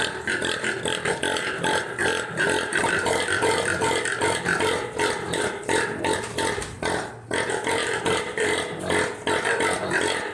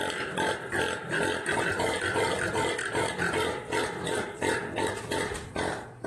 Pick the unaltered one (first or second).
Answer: first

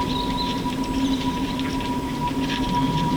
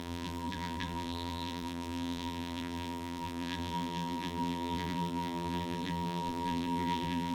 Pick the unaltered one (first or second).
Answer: first